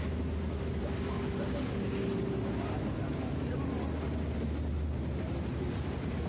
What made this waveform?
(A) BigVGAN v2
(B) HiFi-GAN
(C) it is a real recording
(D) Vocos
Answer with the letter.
C